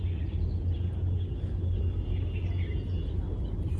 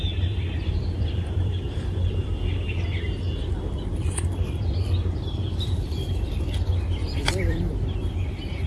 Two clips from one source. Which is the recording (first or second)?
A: first